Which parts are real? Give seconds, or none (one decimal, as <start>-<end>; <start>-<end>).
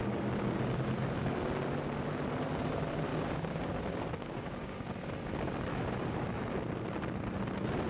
0.0-3.1; 3.6-4.2; 4.8-7.9